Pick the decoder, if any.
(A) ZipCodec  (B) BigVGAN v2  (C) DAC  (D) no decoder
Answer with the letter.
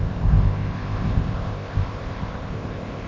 A